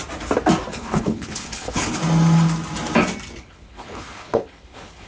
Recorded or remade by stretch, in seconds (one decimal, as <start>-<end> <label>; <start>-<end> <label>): 0.0-0.7 recorded; 0.7-2.0 remade; 2.0-3.4 recorded; 3.4-5.1 remade